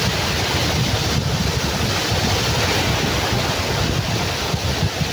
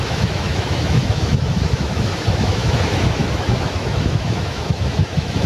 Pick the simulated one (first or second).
second